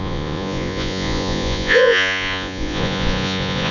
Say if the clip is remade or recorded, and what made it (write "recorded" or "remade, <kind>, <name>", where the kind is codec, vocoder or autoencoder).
remade, vocoder, Vocos